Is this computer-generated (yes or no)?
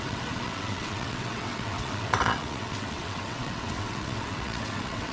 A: yes